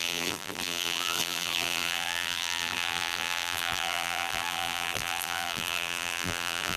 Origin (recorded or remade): remade